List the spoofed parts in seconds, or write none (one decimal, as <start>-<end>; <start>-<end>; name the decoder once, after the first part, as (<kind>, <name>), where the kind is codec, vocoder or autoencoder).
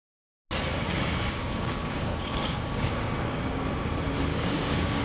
0.7-3.7 (codec, DAC); 4.3-5.0